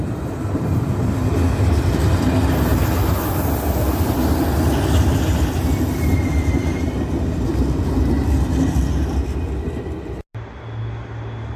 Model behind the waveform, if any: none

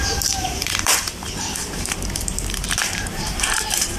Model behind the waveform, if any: vocoder, BigVGAN v2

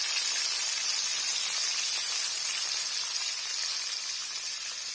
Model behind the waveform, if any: none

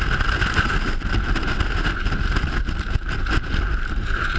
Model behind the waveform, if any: none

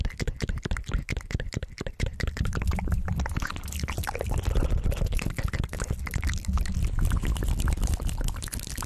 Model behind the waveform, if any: vocoder, BigVGAN v2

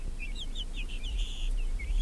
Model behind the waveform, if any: vocoder, BigVGAN v2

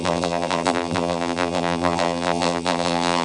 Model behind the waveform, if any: vocoder, BigVGAN v2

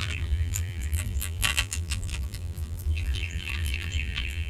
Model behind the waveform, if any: vocoder, BigVGAN v2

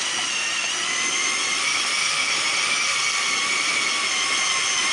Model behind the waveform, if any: vocoder, BigVGAN v2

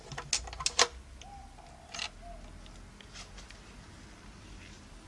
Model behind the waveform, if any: none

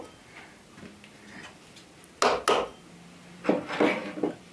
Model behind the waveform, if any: none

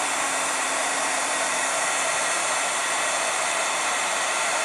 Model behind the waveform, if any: vocoder, BigVGAN v2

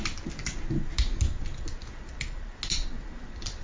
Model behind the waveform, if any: none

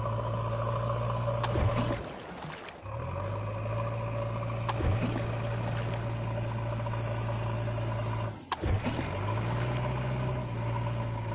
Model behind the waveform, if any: none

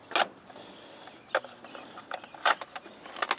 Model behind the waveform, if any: none